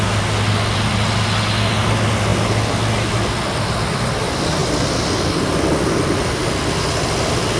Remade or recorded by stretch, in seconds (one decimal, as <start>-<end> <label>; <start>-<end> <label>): 0.0-7.6 recorded